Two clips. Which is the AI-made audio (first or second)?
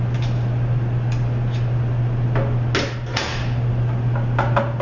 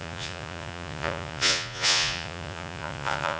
second